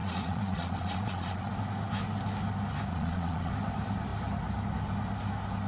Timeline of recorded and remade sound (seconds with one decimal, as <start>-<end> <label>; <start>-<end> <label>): 0.0-1.5 remade; 1.5-2.9 recorded; 2.9-3.5 remade; 3.5-5.7 recorded